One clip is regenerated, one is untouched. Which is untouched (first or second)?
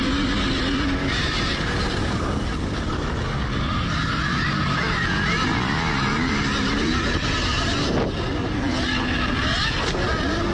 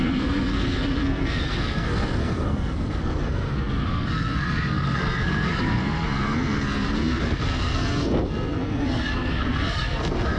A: first